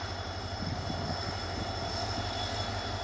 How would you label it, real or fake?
real